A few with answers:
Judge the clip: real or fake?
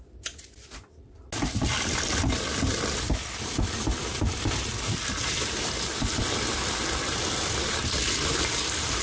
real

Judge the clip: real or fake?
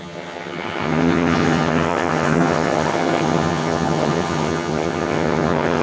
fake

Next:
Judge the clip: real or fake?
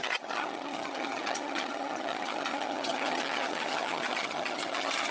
fake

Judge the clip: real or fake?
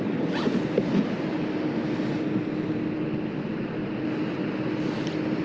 real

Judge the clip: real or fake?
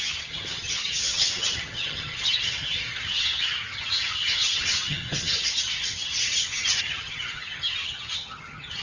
fake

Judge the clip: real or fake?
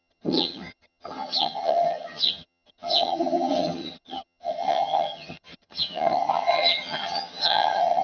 fake